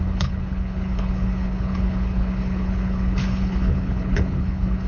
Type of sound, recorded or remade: remade